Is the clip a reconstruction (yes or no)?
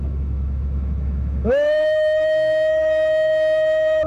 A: yes